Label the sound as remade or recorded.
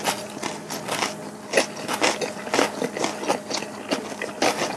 recorded